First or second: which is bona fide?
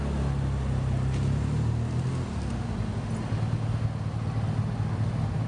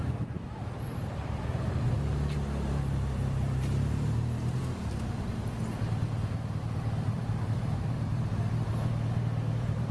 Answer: first